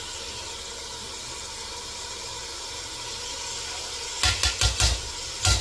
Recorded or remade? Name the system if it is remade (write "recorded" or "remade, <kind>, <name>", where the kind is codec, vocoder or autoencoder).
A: recorded